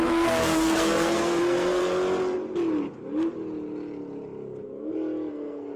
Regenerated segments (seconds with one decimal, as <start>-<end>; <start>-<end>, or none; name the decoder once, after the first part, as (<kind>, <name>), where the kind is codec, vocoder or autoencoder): 0.0-1.8 (codec, SNAC); 5.3-5.8